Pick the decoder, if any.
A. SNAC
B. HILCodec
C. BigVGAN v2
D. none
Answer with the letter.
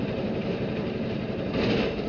C